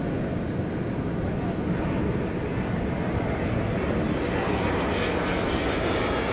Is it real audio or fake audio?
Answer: real